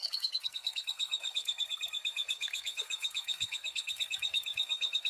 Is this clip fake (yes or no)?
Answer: yes